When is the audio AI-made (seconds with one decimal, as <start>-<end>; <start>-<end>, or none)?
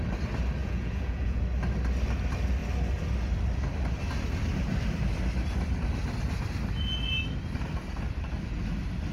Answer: 0.6-1.4